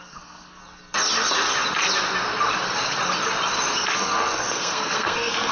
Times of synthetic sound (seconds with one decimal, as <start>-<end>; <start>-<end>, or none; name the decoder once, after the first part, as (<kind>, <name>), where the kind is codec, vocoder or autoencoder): 0.0-0.6 (codec, SNAC); 3.9-5.5